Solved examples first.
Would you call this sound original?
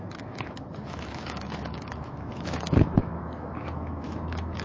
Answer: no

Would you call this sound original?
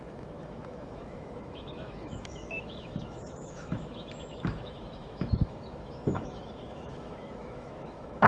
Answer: no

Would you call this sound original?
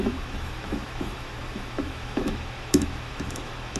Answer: no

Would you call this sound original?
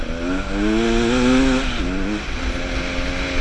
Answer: yes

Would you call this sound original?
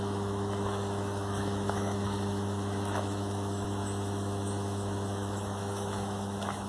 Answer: no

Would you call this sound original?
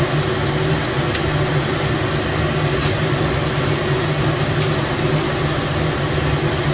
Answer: yes